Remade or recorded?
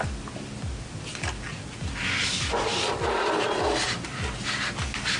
recorded